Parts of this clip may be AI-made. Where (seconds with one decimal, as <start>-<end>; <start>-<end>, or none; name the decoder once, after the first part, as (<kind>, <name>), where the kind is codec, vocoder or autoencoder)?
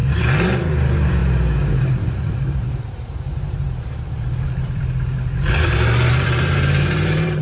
0.0-1.2 (vocoder, BigVGAN v2); 1.8-7.4